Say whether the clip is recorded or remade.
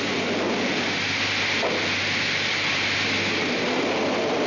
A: recorded